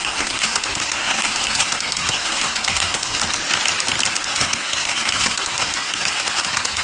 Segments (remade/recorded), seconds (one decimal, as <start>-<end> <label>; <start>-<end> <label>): 0.0-3.2 remade; 3.2-4.1 recorded; 4.1-6.8 remade